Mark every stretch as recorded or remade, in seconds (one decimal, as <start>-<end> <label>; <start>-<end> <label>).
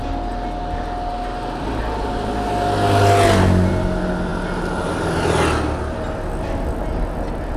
0.0-7.6 recorded